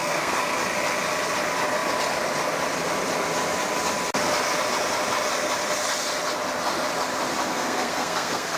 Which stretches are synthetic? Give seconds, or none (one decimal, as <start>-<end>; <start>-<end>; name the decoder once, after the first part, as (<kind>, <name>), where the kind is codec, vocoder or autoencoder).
0.0-0.6 (codec, SNAC); 7.5-8.6